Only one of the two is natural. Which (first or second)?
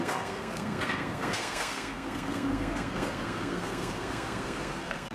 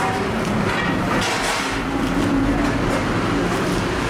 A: second